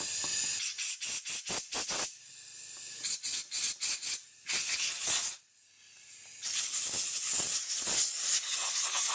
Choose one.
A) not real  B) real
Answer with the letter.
B